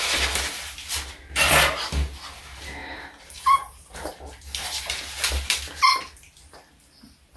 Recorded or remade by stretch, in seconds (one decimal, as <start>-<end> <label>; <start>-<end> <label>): 0.0-7.4 recorded